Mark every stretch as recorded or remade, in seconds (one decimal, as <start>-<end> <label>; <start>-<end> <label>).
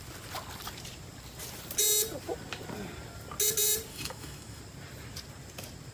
0.0-3.9 recorded; 3.9-4.6 remade; 4.6-5.9 recorded